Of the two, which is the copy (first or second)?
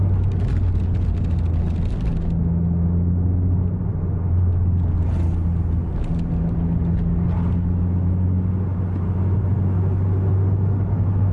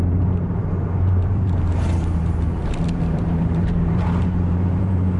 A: second